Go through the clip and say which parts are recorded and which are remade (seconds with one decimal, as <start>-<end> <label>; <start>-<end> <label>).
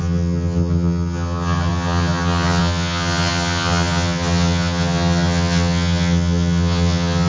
0.0-7.3 remade